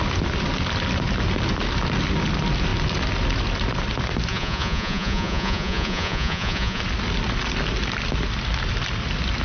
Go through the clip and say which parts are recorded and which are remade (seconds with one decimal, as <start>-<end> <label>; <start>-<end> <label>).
0.0-4.3 recorded; 4.3-6.8 remade; 6.8-9.4 recorded